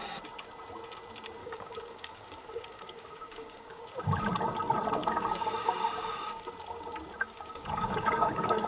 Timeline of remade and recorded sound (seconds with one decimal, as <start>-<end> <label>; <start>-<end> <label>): 0.0-1.4 recorded; 1.4-3.8 remade; 3.8-5.0 recorded; 5.0-6.5 remade; 6.5-7.2 recorded; 7.2-8.7 remade

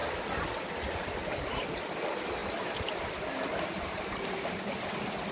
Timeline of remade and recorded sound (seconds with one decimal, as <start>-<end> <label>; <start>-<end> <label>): 0.0-5.3 recorded